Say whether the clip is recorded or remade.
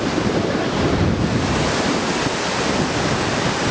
recorded